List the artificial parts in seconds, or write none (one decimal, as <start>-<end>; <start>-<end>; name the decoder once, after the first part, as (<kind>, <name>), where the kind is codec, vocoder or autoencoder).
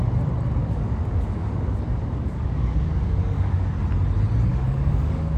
0.6-3.7 (codec, DAC); 4.5-5.4